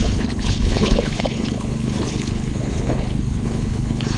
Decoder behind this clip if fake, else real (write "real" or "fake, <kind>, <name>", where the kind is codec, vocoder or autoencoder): fake, codec, HILCodec